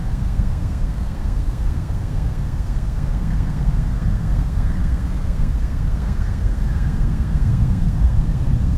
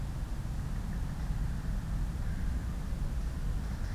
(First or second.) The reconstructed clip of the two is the first